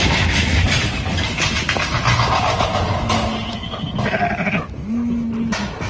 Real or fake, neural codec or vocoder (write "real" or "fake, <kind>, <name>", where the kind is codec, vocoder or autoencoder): real